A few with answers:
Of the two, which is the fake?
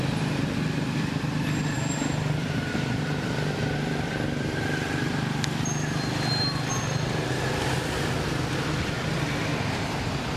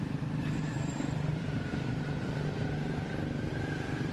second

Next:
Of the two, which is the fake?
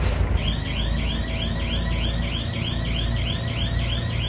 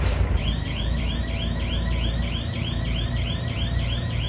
second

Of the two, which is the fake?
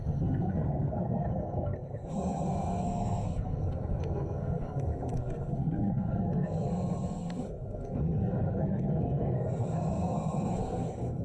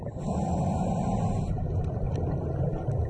first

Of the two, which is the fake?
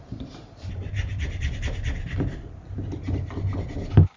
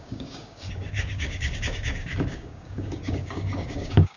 second